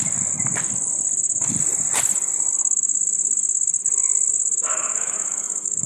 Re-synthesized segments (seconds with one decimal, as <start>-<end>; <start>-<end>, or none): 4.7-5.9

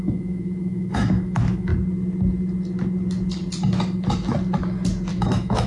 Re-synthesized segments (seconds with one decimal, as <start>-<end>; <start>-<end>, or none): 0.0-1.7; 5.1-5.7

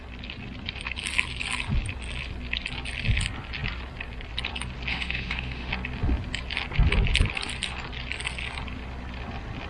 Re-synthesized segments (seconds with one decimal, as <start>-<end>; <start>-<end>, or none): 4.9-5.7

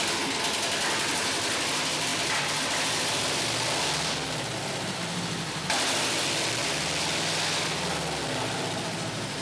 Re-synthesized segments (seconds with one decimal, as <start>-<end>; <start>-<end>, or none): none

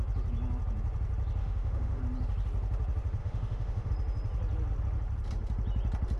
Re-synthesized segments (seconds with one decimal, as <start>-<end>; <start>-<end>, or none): 1.4-2.0; 3.2-3.9

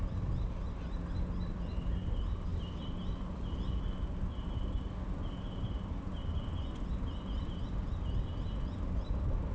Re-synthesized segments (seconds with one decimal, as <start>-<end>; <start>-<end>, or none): none

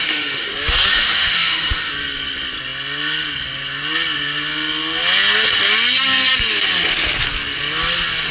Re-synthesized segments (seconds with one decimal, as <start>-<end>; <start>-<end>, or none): 0.0-0.5; 0.9-1.9

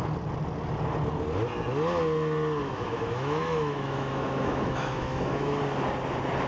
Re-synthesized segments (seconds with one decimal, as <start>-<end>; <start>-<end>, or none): 2.6-5.6